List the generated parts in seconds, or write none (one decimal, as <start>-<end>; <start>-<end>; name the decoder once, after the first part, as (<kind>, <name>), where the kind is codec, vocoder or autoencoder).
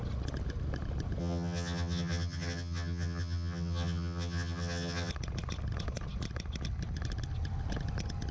1.2-5.1 (vocoder, HiFi-GAN)